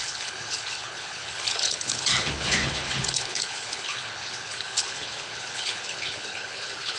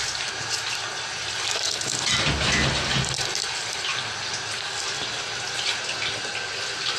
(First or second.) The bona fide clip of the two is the second